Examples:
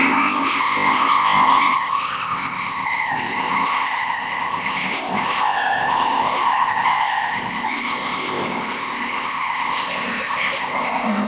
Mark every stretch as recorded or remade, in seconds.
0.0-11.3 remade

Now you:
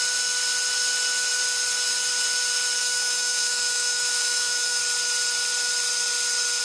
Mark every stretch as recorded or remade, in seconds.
0.0-2.8 recorded; 2.8-4.8 remade; 4.8-6.6 recorded

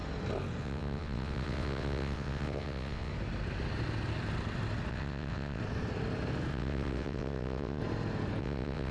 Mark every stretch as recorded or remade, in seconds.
0.0-0.6 recorded; 0.6-3.1 remade; 3.1-4.9 recorded; 4.9-5.6 remade; 5.6-6.5 recorded; 6.5-7.8 remade; 7.8-8.4 recorded; 8.4-8.9 remade